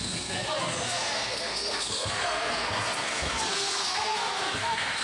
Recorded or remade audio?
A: remade